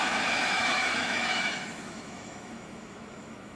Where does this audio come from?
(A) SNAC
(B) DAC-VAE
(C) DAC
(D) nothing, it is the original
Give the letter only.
B